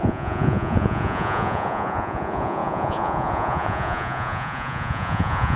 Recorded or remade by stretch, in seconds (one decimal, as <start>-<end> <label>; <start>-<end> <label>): 0.0-5.6 remade